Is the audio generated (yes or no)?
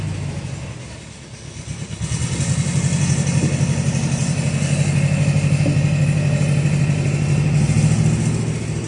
no